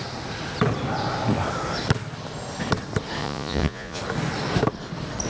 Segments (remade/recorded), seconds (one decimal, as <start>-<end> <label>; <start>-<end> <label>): 0.0-3.2 recorded; 3.2-4.0 remade; 4.0-5.3 recorded